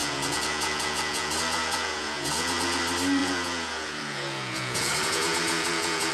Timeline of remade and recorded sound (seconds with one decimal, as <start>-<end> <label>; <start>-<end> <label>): 0.0-2.8 remade; 2.8-3.2 recorded; 3.2-6.1 remade